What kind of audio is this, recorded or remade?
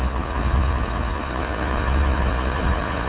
remade